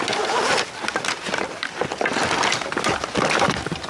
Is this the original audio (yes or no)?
yes